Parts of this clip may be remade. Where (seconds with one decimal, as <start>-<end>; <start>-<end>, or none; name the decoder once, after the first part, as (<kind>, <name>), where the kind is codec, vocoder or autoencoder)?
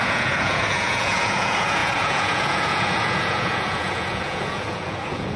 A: 0.0-5.4 (vocoder, Vocos)